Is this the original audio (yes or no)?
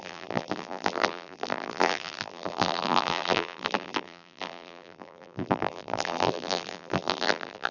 no